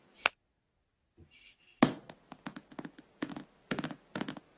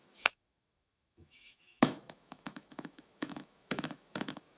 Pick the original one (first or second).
first